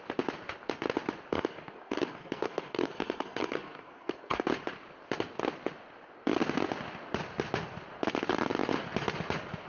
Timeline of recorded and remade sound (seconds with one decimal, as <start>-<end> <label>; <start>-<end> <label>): 0.0-1.3 recorded; 1.3-4.5 remade; 4.5-9.7 recorded